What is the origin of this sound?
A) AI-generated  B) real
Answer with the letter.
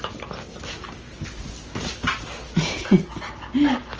B